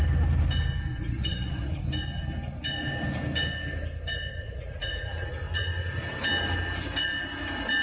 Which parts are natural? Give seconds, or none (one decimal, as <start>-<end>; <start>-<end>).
0.0-0.9; 1.8-4.3; 5.6-7.8

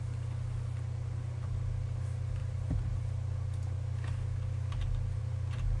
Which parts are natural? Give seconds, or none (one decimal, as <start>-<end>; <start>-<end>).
0.0-5.8

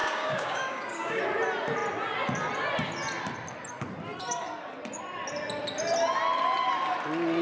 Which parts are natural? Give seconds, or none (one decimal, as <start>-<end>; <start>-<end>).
1.2-7.4

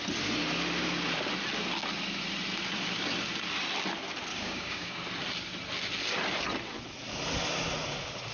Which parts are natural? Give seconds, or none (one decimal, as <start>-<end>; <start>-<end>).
0.0-4.3; 5.0-8.3